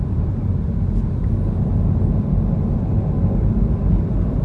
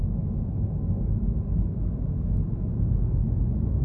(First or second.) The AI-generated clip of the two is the second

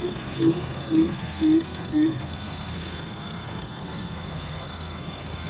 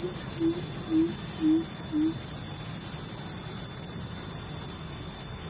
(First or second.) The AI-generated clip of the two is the first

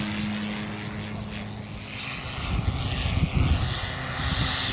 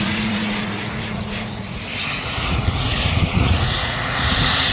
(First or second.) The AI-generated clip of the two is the second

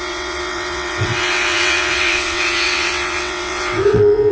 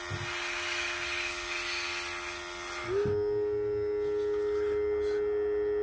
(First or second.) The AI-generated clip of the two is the first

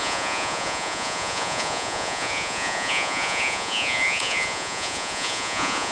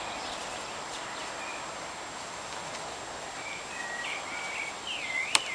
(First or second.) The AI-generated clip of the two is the first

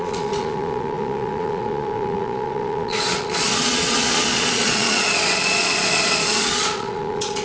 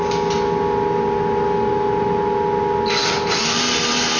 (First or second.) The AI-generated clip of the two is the first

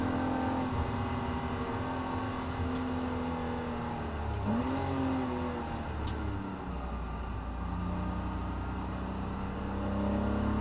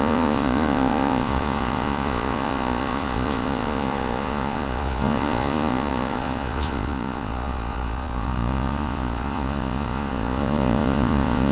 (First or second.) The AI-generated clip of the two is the second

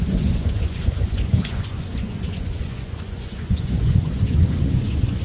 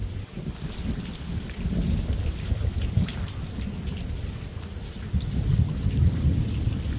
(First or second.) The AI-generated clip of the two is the first